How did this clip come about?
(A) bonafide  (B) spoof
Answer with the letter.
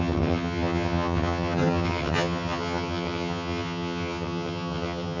B